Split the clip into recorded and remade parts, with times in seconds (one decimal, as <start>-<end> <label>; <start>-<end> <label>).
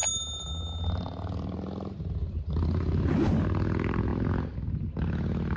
0.0-0.5 remade; 0.5-2.2 recorded; 2.2-3.2 remade; 3.2-5.6 recorded